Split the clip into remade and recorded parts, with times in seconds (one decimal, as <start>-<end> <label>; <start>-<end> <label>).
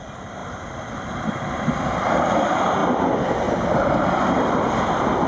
0.0-2.8 remade; 2.8-4.1 recorded; 4.1-5.3 remade